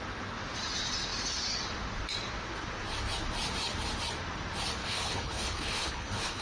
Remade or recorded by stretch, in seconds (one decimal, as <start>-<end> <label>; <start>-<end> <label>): 0.0-4.8 recorded; 4.8-6.4 remade